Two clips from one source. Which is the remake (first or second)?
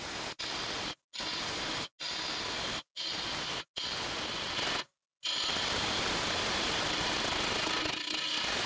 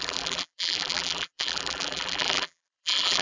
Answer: second